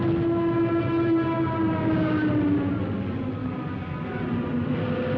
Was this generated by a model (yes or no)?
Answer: no